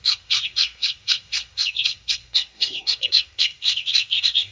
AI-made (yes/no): yes